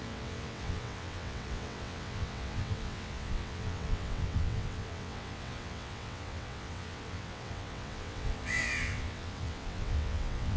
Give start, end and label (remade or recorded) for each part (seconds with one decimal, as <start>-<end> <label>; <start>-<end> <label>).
0.0-10.6 remade